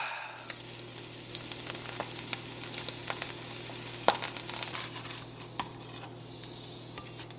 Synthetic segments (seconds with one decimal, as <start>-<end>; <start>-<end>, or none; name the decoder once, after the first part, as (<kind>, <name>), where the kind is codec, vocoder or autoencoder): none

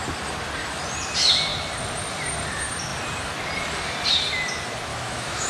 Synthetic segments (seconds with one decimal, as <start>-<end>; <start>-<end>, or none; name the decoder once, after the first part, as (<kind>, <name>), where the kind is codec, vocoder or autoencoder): 4.9-5.5 (autoencoder, DAC-VAE)

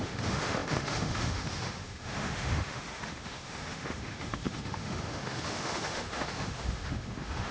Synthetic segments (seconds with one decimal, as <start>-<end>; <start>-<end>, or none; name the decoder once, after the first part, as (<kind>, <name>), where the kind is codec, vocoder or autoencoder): 0.0-7.5 (autoencoder, DAC-VAE)

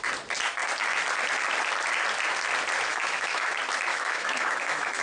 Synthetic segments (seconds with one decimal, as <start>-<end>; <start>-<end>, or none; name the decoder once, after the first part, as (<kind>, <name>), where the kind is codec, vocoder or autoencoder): 2.9-3.5 (autoencoder, DAC-VAE); 3.9-5.0

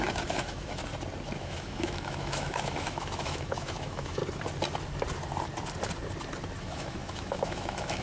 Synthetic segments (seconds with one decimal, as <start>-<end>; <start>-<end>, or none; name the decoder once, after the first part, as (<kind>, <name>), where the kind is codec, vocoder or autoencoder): 0.0-0.8 (autoencoder, DAC-VAE); 1.4-4.2; 6.6-8.0